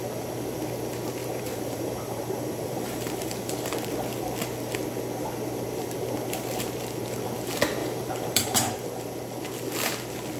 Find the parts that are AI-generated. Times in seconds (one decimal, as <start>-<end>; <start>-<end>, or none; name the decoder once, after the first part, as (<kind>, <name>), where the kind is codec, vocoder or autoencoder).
1.2-3.9 (vocoder, BigVGAN v2); 7.8-8.7